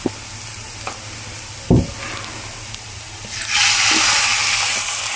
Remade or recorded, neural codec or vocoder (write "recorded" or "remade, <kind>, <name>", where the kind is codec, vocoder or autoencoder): recorded